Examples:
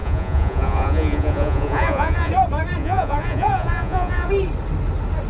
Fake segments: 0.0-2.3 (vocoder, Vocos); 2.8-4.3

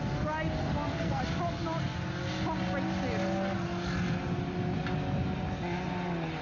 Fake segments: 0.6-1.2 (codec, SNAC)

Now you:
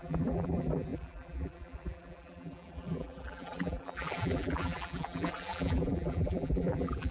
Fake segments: 0.0-7.1 (vocoder, BigVGAN v2)

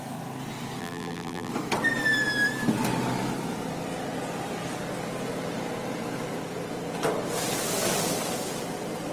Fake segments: 0.8-1.5 (vocoder, BigVGAN v2)

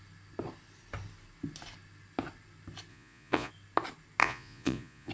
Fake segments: 2.9-3.5 (vocoder, Vocos); 4.2-5.1

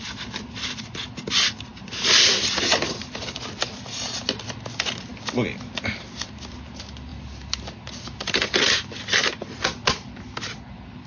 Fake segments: none

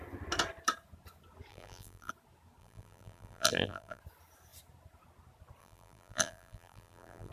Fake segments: 1.5-2.1 (vocoder, BigVGAN v2); 2.6-4.0; 5.6-7.3